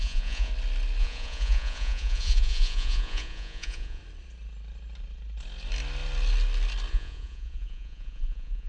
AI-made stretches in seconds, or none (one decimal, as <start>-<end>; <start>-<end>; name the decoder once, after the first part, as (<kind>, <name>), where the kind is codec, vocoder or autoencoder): 0.0-0.5 (vocoder, Vocos); 1.0-4.0; 6.9-8.7